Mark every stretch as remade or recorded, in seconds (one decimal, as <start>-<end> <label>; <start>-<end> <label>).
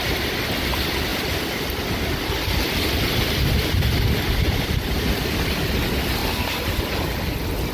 0.0-7.7 recorded